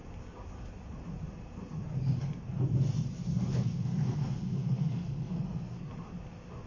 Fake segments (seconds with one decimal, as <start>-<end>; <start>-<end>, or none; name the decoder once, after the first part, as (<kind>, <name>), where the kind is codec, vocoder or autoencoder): 3.3-5.9 (codec, SNAC)